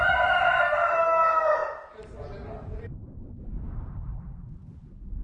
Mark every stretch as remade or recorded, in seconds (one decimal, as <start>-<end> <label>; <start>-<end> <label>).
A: 0.0-1.6 recorded; 1.6-3.4 remade; 3.4-5.2 recorded